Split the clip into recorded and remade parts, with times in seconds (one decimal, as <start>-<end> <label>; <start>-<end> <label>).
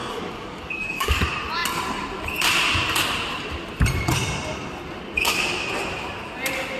0.0-1.2 remade; 1.2-6.8 recorded